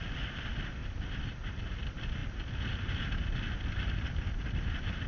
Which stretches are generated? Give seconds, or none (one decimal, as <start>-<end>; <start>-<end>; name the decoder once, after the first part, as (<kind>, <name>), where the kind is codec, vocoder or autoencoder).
0.8-1.7 (vocoder, BigVGAN v2)